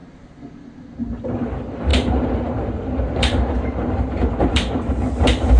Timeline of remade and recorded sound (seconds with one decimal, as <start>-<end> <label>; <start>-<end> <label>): 0.0-1.4 recorded; 1.4-5.6 remade